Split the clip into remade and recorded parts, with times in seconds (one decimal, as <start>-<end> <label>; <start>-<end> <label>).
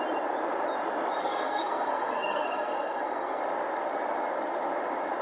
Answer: 0.0-1.2 recorded; 1.2-3.4 remade; 3.4-5.2 recorded